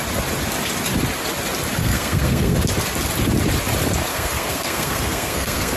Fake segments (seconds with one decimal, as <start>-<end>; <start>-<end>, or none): 1.8-2.6; 4.1-5.8